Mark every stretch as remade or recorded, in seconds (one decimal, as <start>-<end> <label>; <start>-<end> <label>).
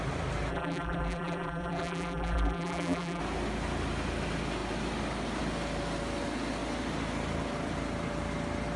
0.0-0.5 recorded; 0.5-3.2 remade; 3.2-8.8 recorded